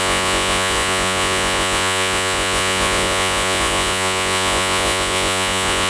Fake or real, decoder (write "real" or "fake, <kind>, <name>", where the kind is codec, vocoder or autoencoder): fake, vocoder, Vocos